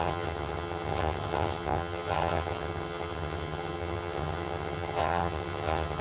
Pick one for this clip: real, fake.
fake